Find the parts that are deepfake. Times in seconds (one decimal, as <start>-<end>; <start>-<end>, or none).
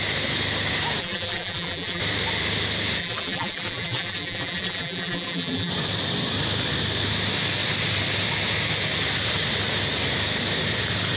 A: 1.0-2.0; 3.0-5.7